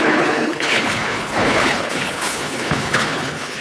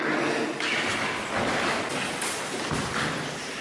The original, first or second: second